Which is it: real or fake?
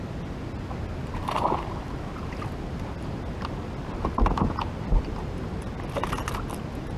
real